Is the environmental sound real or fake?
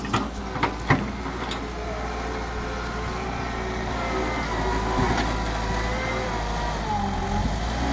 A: real